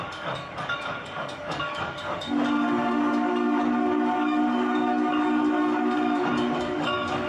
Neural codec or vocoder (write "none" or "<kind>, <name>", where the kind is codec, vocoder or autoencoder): codec, DAC